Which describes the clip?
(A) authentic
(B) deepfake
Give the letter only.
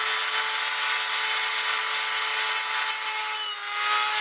A